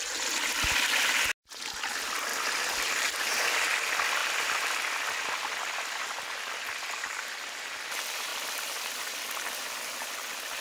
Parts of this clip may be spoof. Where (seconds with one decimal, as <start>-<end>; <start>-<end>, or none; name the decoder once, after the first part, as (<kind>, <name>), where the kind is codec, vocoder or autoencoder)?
none